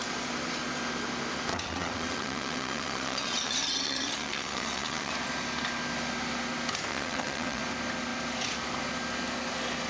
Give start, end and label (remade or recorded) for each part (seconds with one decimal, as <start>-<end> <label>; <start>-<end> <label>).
0.0-1.5 recorded; 1.5-5.1 remade; 5.1-6.9 recorded; 6.9-7.6 remade; 7.6-9.9 recorded